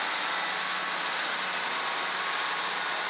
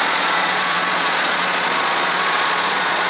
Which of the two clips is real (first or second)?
first